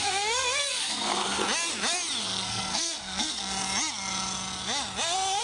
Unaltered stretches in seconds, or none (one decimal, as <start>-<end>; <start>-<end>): 1.4-2.2; 3.4-5.4